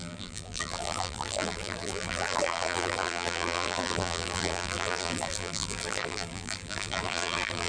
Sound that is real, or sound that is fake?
fake